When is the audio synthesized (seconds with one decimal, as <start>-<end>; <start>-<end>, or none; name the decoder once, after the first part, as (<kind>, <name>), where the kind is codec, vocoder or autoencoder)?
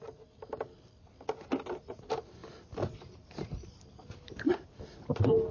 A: none